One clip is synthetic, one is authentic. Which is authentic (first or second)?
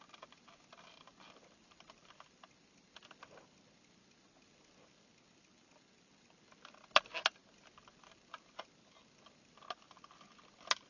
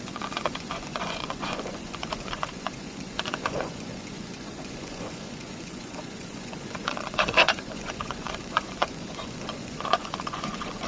first